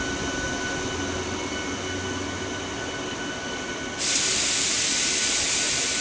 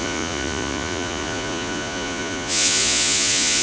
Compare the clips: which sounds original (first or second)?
first